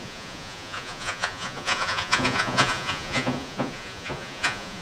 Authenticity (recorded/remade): remade